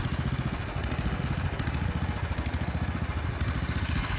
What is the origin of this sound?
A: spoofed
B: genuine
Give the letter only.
B